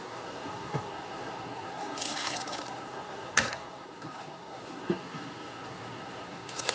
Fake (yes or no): yes